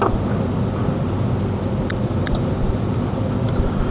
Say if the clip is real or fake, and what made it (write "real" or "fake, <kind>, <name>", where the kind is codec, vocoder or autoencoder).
fake, vocoder, BigVGAN v2